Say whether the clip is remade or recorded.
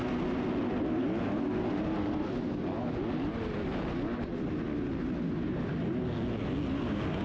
recorded